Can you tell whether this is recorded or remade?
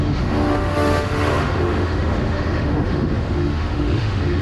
remade